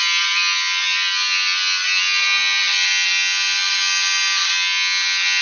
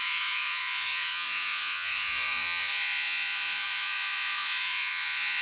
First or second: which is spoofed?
second